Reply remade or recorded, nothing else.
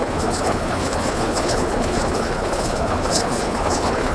remade